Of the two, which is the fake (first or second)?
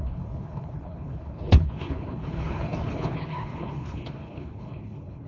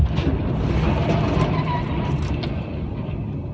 first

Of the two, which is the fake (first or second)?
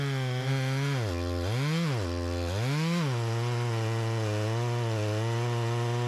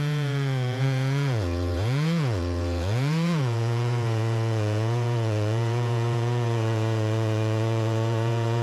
second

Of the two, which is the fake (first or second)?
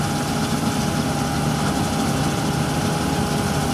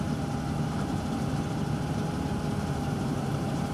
second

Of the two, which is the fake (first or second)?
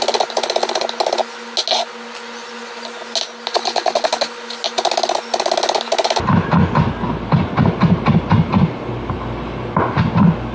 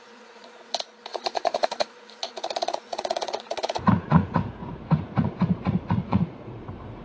second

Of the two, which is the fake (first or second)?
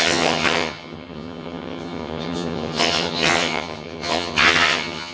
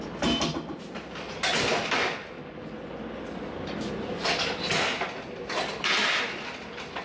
first